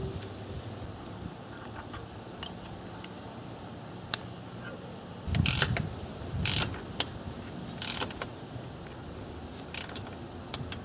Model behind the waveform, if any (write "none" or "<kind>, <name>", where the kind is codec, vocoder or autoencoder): none